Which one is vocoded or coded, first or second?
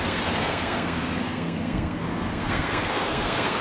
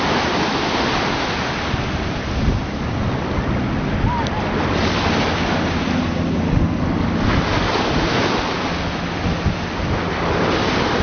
first